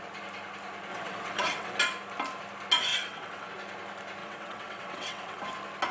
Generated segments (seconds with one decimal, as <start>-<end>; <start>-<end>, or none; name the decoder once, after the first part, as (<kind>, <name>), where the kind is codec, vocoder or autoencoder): 0.9-1.8 (vocoder, WaveNeXt); 2.9-3.5; 4.2-5.4